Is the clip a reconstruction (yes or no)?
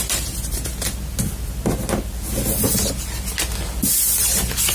no